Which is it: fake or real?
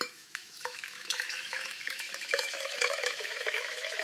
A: fake